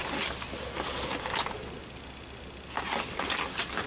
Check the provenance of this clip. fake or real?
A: real